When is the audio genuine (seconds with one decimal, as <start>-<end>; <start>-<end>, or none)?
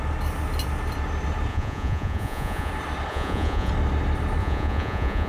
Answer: 0.0-1.5; 2.7-3.1; 3.7-4.4